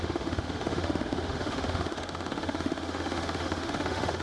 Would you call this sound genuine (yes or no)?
no